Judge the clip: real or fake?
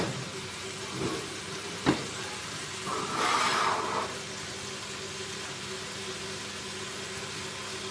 real